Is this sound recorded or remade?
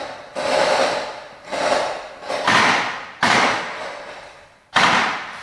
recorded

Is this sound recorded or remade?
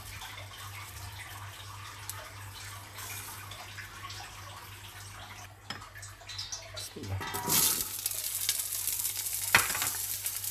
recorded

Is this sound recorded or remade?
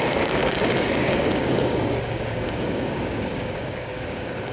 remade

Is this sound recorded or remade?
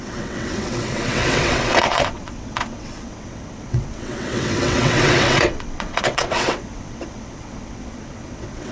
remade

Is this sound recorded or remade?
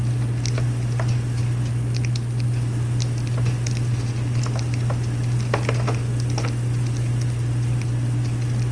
recorded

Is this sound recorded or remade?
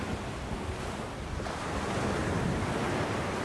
recorded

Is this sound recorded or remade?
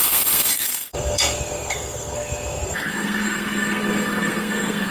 remade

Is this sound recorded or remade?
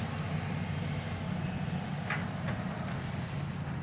recorded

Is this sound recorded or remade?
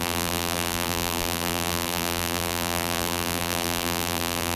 remade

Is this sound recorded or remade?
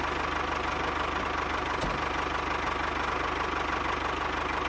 recorded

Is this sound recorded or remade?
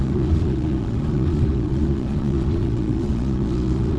remade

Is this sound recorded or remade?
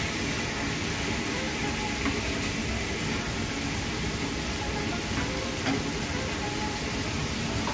recorded